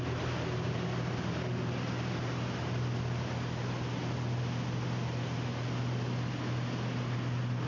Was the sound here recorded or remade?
recorded